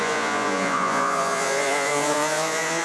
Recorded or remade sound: remade